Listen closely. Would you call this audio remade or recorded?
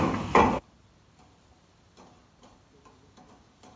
recorded